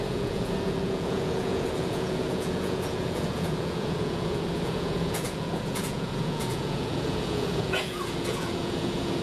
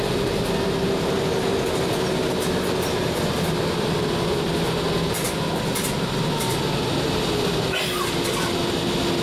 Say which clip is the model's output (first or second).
first